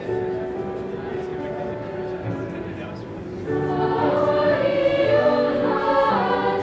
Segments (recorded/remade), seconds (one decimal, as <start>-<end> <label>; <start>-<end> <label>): 0.0-4.8 recorded; 4.8-6.1 remade; 6.1-6.6 recorded